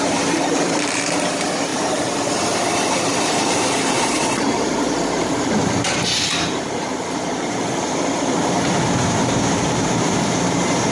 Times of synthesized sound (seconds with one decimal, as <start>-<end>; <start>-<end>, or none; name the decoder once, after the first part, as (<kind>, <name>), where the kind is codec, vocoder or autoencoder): 0.0-10.9 (vocoder, BigVGAN v2)